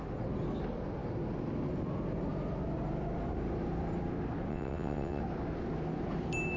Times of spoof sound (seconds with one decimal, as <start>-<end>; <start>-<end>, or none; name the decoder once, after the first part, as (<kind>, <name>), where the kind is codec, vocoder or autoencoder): 4.5-5.2 (vocoder, WaveNeXt)